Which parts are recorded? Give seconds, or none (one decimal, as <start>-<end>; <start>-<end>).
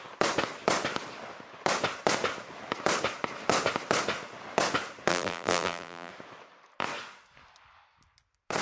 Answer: 0.0-5.1; 6.1-8.6